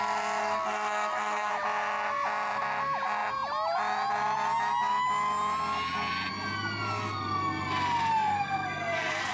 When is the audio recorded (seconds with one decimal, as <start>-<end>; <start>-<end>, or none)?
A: 0.0-0.4; 1.5-8.1